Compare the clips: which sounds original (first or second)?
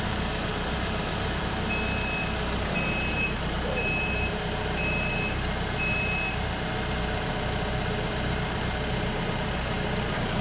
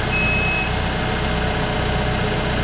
second